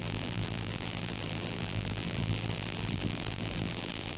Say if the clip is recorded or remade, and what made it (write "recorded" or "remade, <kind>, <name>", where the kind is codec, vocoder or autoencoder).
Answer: remade, vocoder, BigVGAN v2